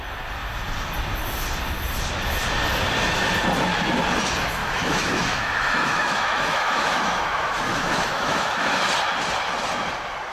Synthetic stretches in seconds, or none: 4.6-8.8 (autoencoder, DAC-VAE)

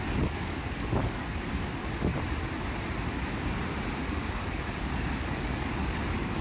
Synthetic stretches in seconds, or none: 0.0-2.1 (codec, DAC); 4.1-6.4

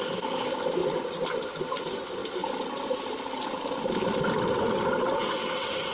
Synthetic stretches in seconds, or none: none

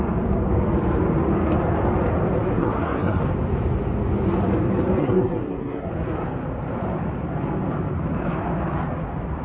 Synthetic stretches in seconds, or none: 2.5-3.2 (codec, SNAC); 5.0-5.9

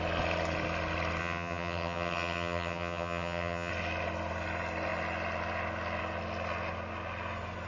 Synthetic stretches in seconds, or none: 1.2-3.7 (vocoder, HiFi-GAN)